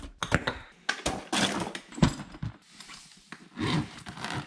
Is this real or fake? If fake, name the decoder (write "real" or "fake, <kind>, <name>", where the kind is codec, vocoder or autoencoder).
real